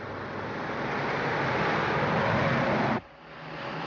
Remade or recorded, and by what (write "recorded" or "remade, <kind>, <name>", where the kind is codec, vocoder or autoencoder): remade, vocoder, BigVGAN v2